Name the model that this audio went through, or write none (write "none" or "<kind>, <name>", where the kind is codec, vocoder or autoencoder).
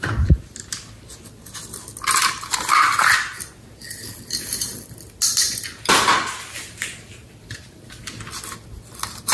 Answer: none